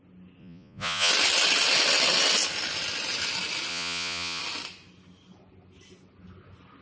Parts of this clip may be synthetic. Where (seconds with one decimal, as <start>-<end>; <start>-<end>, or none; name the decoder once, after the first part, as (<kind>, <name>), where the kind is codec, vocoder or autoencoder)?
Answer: 0.4-1.1 (vocoder, Vocos); 3.7-4.4